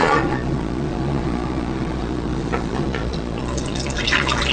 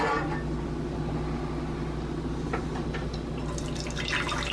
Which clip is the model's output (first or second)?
first